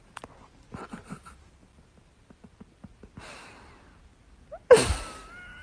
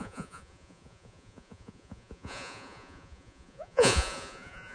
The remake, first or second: second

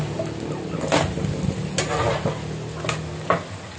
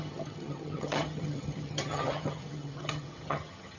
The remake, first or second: second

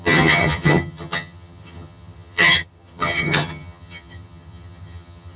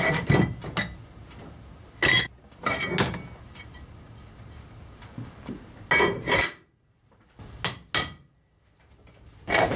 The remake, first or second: first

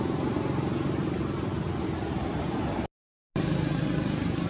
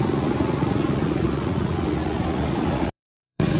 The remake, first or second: second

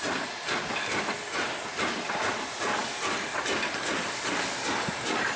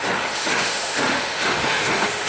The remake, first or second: second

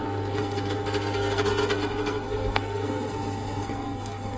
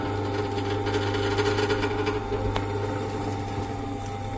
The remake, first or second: first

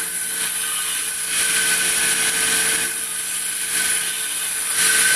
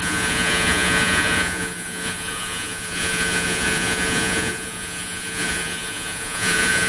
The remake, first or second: second